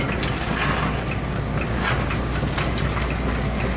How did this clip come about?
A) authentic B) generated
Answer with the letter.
A